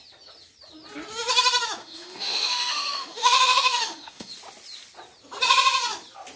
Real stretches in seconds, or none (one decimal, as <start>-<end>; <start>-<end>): 0.0-1.8; 4.3-6.4